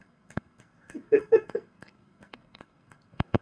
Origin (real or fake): fake